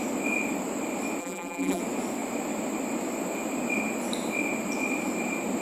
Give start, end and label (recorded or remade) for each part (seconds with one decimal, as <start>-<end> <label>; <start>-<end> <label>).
0.0-1.2 recorded; 1.2-1.8 remade; 1.8-5.6 recorded